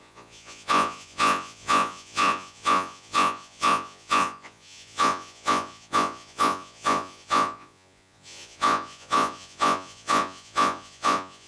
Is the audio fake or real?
fake